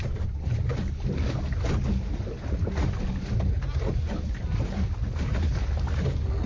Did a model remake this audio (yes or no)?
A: no